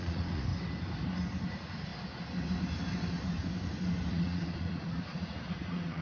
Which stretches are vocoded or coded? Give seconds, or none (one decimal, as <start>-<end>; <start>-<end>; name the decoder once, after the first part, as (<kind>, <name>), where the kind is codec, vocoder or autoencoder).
0.0-0.5 (vocoder, Vocos); 1.5-1.9; 4.1-6.0